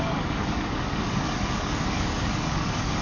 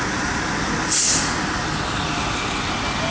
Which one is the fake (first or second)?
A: first